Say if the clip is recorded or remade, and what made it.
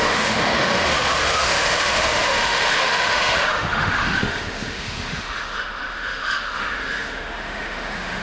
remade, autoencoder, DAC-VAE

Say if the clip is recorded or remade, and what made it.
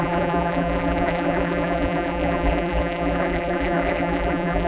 remade, vocoder, BigVGAN v2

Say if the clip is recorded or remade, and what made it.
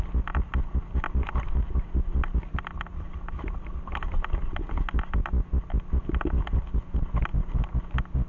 recorded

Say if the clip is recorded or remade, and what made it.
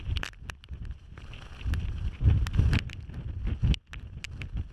recorded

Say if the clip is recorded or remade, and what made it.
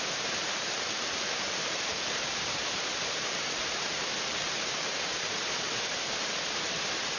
remade, vocoder, BigVGAN v2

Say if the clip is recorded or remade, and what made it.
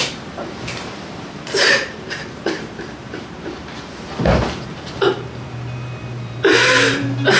remade, vocoder, BigVGAN v2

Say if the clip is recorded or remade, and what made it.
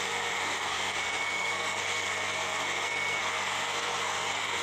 remade, codec, SNAC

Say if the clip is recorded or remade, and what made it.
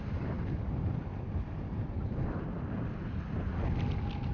recorded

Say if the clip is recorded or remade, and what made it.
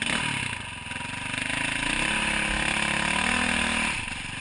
recorded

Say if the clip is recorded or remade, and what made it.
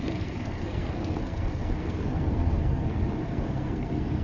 remade, codec, SNAC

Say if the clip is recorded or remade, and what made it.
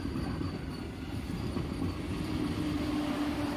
recorded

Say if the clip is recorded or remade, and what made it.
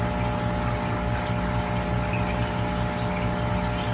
recorded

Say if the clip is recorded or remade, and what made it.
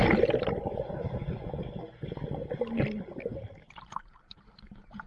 recorded